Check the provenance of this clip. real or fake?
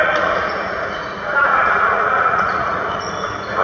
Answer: fake